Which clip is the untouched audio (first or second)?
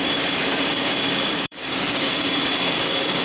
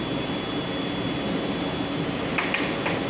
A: second